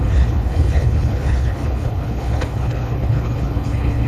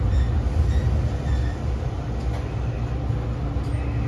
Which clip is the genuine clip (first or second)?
second